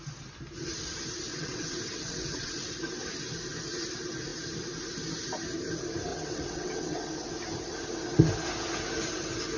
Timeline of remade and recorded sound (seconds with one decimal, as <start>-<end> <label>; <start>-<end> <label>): 0.0-1.3 recorded; 1.3-2.7 remade; 2.7-6.1 recorded; 6.1-7.3 remade; 7.3-9.6 recorded